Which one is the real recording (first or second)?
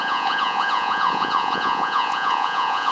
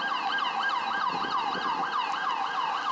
second